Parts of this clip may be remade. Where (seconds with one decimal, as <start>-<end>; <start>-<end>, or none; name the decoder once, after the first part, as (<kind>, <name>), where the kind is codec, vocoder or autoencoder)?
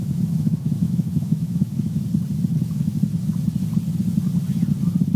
0.0-2.0 (autoencoder, DAC-VAE)